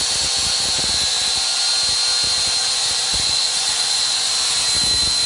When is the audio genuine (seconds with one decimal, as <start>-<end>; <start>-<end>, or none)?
0.0-3.1; 4.3-5.3